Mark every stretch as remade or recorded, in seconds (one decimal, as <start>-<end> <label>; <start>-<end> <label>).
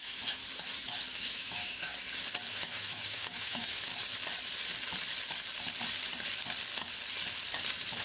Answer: 0.0-0.4 remade; 0.4-1.1 recorded; 1.1-1.9 remade; 1.9-2.5 recorded; 2.5-3.9 remade; 3.9-8.0 recorded